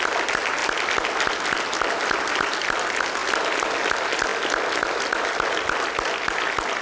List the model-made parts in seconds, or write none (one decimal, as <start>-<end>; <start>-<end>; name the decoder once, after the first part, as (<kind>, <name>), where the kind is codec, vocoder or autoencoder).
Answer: none